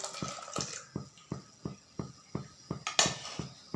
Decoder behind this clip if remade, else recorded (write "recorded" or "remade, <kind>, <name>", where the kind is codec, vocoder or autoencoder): recorded